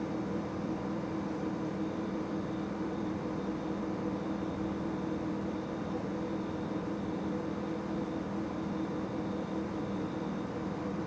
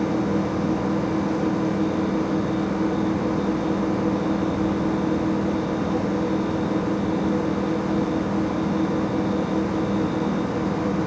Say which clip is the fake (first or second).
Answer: first